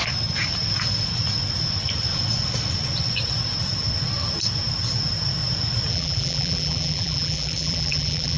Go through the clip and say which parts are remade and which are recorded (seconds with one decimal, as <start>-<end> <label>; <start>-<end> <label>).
0.0-5.9 recorded; 5.9-8.4 remade